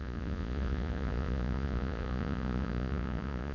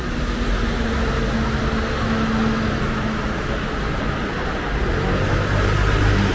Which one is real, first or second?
second